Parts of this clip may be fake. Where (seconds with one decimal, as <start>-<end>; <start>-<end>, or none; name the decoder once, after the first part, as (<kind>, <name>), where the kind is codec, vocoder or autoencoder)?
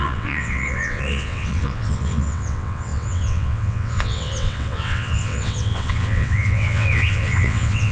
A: 0.0-7.9 (vocoder, WaveNeXt)